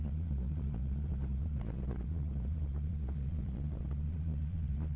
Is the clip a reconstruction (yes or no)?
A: yes